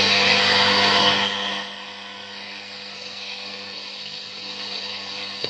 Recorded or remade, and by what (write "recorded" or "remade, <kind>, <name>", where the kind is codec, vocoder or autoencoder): remade, codec, SNAC